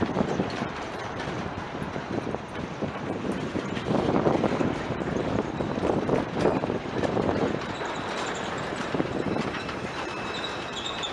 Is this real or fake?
fake